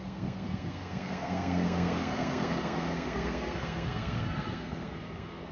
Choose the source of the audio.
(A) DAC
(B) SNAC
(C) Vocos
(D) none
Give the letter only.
B